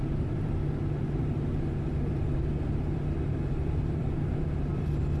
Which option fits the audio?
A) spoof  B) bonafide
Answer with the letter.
A